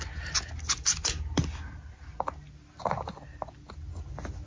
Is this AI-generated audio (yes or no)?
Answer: no